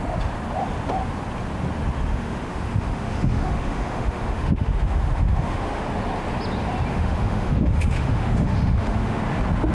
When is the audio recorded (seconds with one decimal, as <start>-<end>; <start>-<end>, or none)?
0.0-2.1; 5.8-6.9; 9.2-9.7